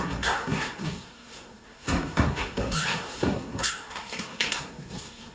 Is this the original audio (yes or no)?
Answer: no